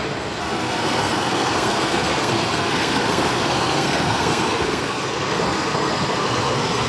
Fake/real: fake